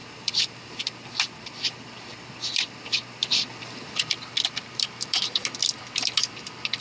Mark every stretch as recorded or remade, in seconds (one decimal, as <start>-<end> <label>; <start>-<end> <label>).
0.0-1.5 remade; 1.5-6.8 recorded